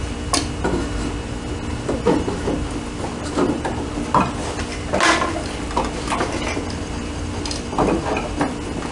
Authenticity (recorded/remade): recorded